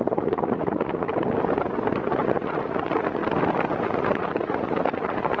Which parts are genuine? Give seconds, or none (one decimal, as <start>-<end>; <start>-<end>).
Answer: 1.1-2.0; 3.2-3.8